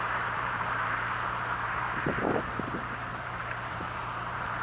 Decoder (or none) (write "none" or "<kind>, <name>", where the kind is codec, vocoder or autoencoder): vocoder, BigVGAN v2